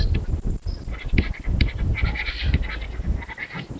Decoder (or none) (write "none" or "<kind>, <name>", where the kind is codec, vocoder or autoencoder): none